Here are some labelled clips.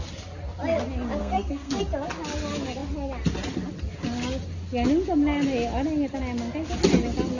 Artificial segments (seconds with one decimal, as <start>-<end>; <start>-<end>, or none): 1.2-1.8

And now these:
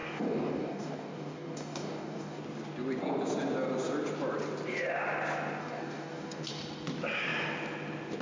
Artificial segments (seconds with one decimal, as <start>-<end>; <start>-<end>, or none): 0.0-2.4; 5.6-6.5

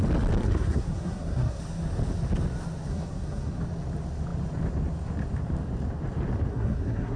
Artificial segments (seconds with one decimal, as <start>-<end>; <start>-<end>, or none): 0.4-1.6; 2.9-3.6; 6.5-7.2

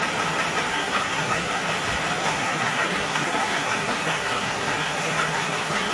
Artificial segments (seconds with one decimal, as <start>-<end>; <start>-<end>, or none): 0.7-1.6; 2.2-5.9

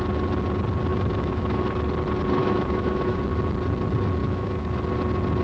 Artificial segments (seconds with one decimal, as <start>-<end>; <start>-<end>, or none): 0.9-1.6; 2.4-3.2; 4.2-4.8